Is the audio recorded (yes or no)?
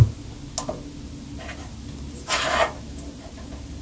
yes